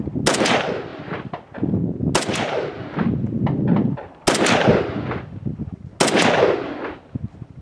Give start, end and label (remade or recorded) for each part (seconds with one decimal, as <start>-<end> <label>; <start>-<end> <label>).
0.0-7.6 recorded